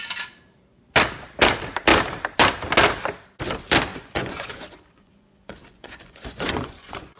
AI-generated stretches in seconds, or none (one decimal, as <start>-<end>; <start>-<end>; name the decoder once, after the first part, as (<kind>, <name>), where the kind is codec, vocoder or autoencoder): 3.9-7.2 (vocoder, Vocos)